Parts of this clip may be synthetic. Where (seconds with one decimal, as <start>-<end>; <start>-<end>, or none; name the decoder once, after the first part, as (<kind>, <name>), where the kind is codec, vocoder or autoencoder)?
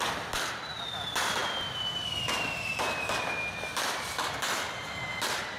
none